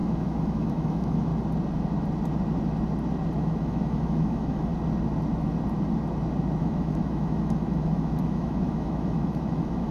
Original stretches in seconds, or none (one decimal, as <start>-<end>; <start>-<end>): 1.3-3.4; 4.7-6.6